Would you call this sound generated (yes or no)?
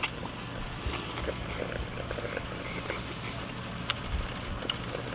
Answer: yes